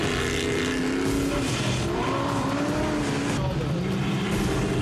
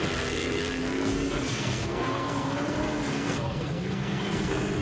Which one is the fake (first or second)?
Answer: second